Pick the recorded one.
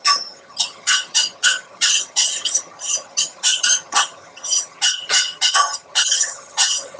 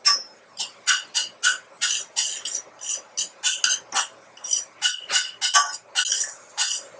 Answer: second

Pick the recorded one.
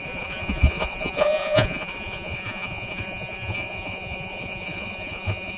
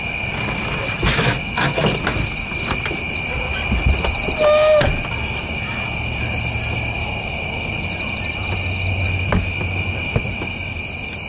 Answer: second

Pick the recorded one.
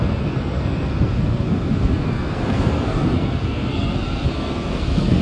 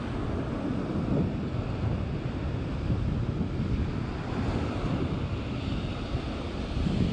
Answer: second